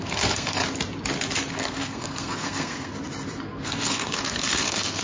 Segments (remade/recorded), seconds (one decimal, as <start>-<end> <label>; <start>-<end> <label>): 0.0-0.6 remade; 0.6-1.5 recorded; 1.5-2.9 remade; 2.9-3.4 recorded; 3.4-5.0 remade